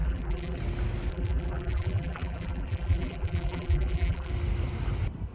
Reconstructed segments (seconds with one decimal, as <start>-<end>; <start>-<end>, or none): 0.0-0.6; 1.1-4.3

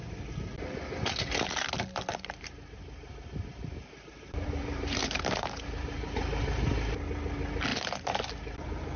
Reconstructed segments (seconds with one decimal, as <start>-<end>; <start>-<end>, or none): 2.1-6.2; 7.7-8.3